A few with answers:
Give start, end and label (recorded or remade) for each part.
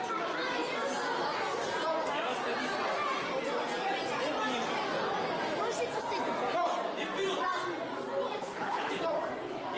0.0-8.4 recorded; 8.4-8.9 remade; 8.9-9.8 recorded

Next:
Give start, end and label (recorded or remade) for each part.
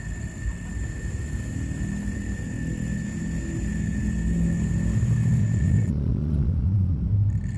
0.0-5.4 recorded; 5.4-7.0 remade; 7.0-7.6 recorded